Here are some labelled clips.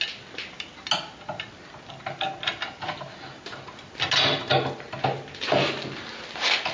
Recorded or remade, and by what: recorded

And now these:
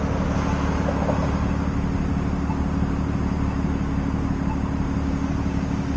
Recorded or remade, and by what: recorded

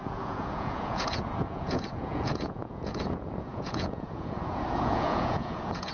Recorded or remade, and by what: remade, vocoder, Vocos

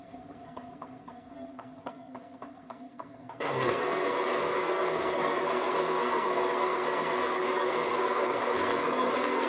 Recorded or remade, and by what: remade, codec, SNAC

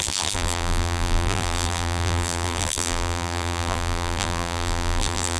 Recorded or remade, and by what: remade, vocoder, BigVGAN v2